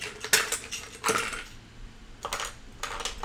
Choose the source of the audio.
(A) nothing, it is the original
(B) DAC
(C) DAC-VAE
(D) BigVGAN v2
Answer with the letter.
A